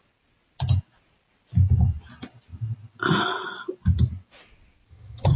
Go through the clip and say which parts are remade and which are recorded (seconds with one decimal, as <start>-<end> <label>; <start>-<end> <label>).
0.0-4.9 recorded; 4.9-5.4 remade